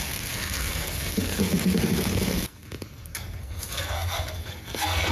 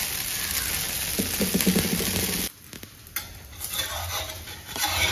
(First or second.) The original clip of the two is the second